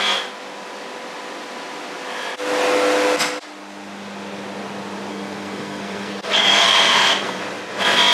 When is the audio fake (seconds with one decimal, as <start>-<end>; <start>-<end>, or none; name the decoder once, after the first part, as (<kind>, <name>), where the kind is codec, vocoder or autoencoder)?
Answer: 5.1-7.4 (codec, SNAC)